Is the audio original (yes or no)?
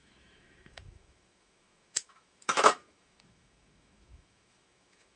no